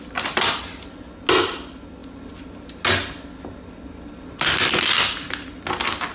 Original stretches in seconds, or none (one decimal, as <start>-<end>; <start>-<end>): 0.0-6.1